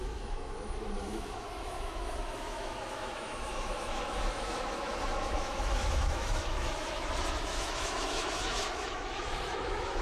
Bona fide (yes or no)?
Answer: no